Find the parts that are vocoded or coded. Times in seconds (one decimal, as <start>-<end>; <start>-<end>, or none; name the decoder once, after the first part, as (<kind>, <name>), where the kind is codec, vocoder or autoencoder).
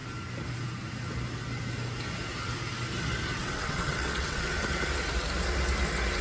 3.4-4.6 (vocoder, WaveNeXt)